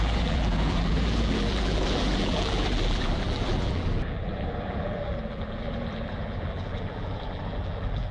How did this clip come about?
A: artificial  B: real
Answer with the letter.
A